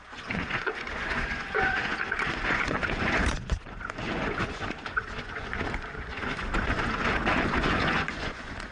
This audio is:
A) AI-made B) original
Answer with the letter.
A